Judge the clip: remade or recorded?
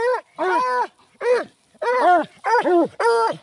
recorded